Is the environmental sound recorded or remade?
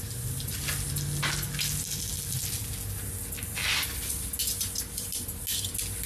recorded